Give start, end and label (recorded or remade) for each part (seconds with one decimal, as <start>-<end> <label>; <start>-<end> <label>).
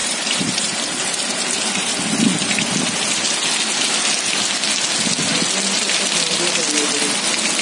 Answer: 0.0-0.8 remade; 0.8-7.6 recorded